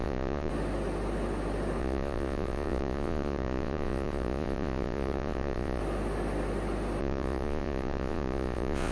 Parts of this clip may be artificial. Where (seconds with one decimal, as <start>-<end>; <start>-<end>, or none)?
0.0-0.5; 1.8-5.8; 7.0-8.9